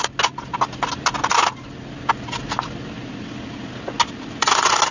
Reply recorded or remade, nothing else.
recorded